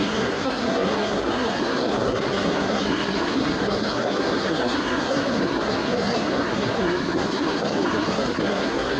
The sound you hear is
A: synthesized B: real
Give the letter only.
A